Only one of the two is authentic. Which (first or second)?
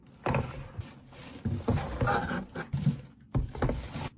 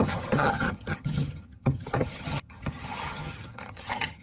first